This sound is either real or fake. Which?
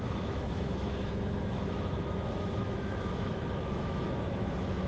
fake